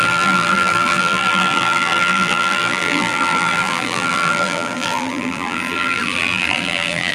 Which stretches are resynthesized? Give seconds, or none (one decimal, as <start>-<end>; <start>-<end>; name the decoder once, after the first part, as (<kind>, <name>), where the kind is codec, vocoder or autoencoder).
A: 0.0-7.1 (vocoder, BigVGAN v2)